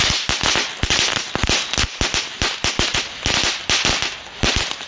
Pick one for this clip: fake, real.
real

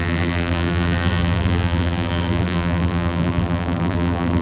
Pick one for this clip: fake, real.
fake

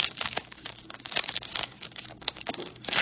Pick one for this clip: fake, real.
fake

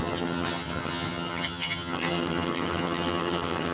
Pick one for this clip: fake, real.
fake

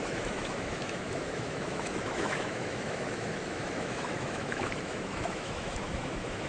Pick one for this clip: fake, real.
fake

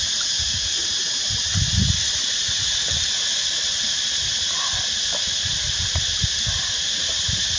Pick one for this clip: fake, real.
real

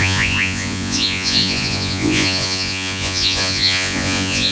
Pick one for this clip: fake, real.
fake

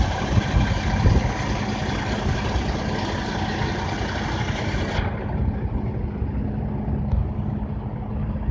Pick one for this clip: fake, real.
real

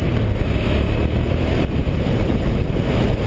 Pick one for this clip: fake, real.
real